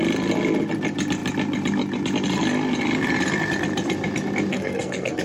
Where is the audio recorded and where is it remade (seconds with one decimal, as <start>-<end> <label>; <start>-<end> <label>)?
0.0-4.5 recorded; 4.5-5.2 remade